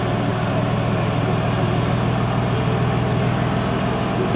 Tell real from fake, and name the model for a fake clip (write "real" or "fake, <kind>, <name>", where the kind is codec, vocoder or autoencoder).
real